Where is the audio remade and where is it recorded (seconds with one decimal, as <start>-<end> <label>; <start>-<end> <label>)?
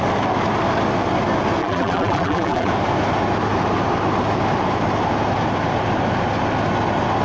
0.0-1.6 recorded; 1.6-2.7 remade; 2.7-7.2 recorded